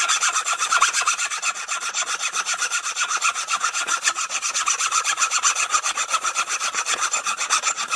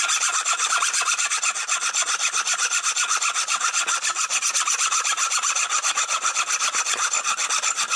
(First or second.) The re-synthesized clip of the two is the first